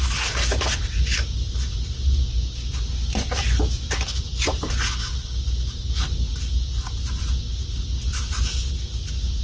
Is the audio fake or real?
real